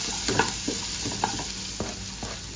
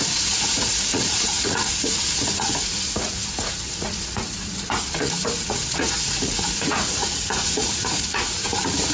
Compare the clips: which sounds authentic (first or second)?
first